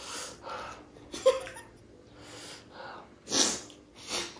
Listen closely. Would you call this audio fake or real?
real